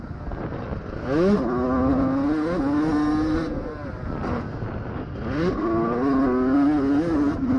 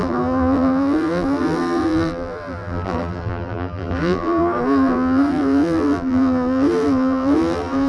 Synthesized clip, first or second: second